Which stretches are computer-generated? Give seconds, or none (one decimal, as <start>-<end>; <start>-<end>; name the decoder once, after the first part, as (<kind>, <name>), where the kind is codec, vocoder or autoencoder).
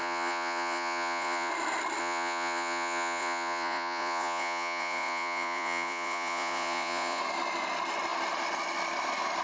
0.0-1.5 (vocoder, Vocos); 2.0-7.2